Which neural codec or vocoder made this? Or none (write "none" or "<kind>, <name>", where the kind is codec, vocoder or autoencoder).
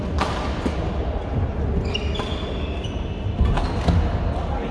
none